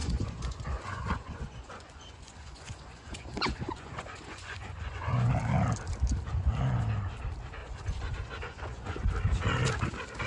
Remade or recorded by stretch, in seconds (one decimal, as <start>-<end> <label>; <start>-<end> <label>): 0.0-5.3 remade; 5.3-7.6 recorded; 7.6-9.1 remade; 9.1-10.3 recorded